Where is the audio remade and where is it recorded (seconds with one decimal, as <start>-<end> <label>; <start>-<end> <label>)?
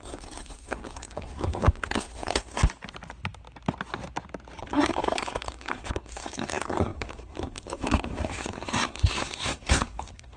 0.0-2.6 remade; 2.6-4.6 recorded; 4.6-10.4 remade